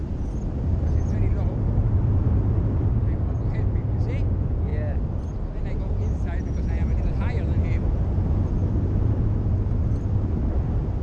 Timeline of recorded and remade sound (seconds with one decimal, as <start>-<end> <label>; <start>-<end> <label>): 0.0-11.0 recorded